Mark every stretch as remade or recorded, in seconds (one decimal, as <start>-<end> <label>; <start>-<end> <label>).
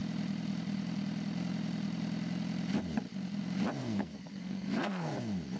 0.0-3.8 recorded; 3.8-5.1 remade; 5.1-5.6 recorded